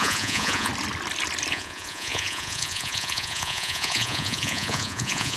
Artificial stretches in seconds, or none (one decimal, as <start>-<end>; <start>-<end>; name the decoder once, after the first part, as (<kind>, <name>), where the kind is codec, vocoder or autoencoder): 0.0-0.7 (vocoder, Vocos); 1.5-5.4